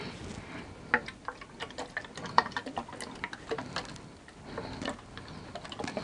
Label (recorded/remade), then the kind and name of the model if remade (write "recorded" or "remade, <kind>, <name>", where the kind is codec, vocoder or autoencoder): recorded